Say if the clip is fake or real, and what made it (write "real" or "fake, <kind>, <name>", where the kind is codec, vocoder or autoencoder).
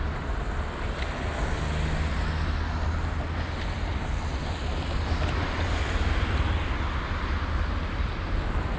real